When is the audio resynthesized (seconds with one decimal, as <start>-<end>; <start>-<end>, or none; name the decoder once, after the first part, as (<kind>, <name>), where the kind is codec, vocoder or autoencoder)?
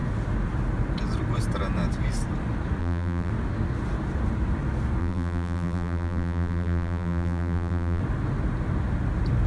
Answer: 2.8-3.3 (vocoder, BigVGAN v2); 5.0-8.0